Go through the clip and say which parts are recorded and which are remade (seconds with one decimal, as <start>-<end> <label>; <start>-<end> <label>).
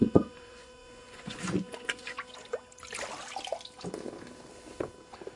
0.0-2.1 remade; 2.1-5.4 recorded